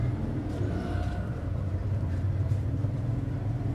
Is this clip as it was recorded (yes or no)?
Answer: no